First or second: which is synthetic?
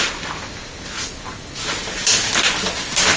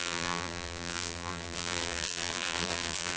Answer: second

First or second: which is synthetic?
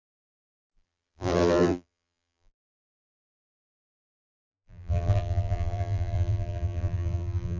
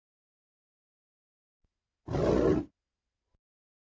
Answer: first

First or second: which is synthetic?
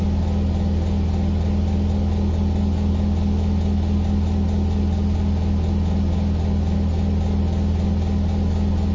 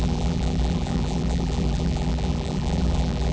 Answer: second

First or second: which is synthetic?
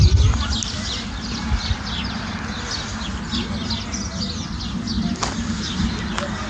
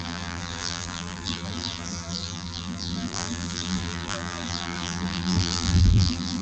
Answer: second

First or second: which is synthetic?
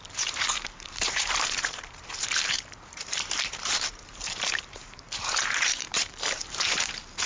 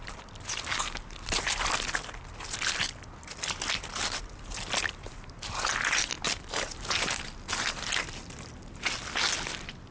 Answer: first